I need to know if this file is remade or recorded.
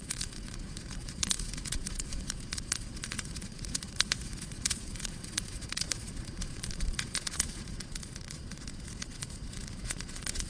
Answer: remade